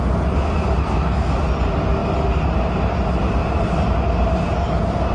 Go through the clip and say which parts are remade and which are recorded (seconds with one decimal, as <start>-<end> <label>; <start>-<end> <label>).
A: 0.0-0.8 recorded; 0.8-1.3 remade; 1.3-5.1 recorded